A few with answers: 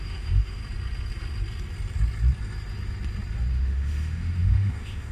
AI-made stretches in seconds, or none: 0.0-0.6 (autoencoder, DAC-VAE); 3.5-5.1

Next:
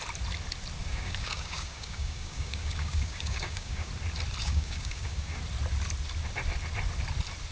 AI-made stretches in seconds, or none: 0.8-3.9 (codec, DAC); 4.4-5.4